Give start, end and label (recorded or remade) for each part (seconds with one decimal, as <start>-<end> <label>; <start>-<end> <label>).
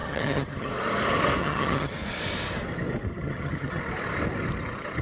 0.0-0.7 remade; 0.7-1.4 recorded; 1.4-1.9 remade; 1.9-3.1 recorded; 3.1-3.8 remade; 3.8-5.0 recorded